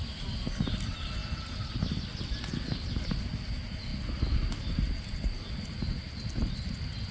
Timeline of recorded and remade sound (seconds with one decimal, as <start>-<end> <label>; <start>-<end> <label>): 0.0-7.1 recorded